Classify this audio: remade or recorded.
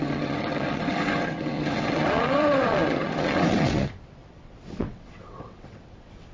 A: remade